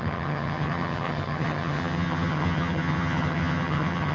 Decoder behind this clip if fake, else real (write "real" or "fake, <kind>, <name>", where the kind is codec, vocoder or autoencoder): fake, vocoder, HiFi-GAN